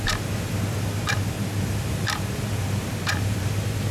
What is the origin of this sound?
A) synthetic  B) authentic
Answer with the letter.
A